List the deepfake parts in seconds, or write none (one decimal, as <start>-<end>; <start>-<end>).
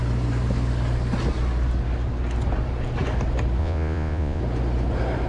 3.6-4.4